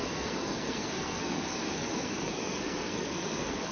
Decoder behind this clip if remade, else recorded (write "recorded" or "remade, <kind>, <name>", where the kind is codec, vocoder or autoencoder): remade, codec, SNAC